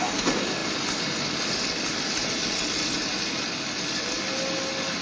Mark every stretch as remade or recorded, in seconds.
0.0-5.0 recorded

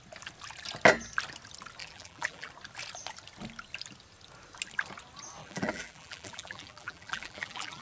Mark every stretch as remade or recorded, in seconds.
0.0-1.8 recorded; 1.8-2.5 remade; 2.5-5.4 recorded; 5.4-7.8 remade

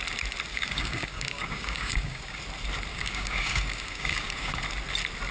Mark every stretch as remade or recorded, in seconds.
0.0-0.5 recorded; 0.5-2.4 remade; 2.4-2.9 recorded; 2.9-4.6 remade; 4.6-5.3 recorded

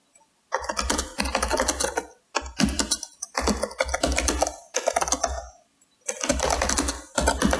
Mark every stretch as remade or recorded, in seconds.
0.0-7.6 recorded

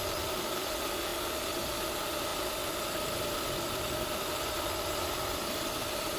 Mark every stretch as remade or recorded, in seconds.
0.0-2.3 recorded; 2.3-6.2 remade

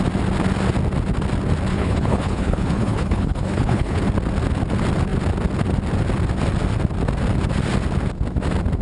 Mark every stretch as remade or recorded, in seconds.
0.0-1.7 recorded; 1.7-4.0 remade; 4.0-8.8 recorded